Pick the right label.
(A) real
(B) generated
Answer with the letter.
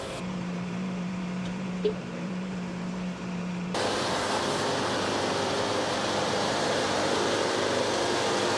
B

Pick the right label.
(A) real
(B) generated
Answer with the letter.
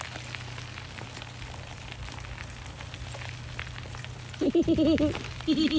A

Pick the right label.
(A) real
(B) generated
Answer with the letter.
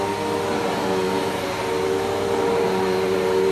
A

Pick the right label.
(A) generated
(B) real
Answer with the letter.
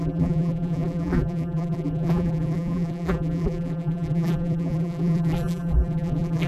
A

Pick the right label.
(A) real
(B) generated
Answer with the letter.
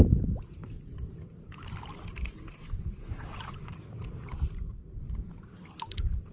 B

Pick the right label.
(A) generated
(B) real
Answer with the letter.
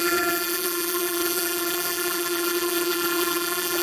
A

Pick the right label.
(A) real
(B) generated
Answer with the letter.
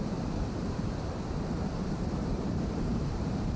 B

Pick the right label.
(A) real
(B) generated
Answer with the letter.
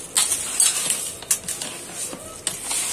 A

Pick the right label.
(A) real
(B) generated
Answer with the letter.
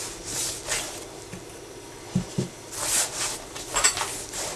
A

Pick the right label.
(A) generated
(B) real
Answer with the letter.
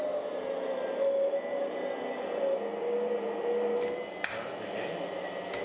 B